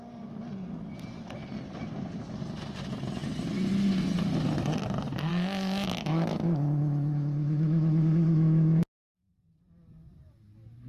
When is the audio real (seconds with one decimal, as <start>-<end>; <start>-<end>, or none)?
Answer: 0.0-5.3; 8.8-10.9